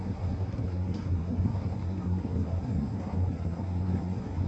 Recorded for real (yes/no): no